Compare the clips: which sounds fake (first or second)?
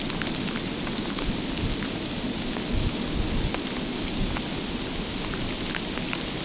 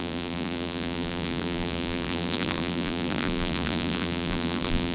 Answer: second